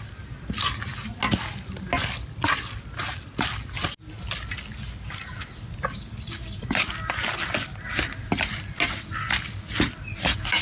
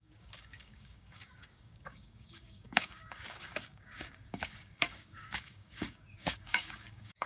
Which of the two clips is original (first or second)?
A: first